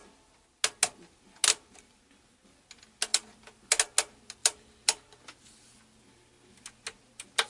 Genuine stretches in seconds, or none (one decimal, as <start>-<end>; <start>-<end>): 0.0-3.1; 3.6-4.4; 5.0-7.5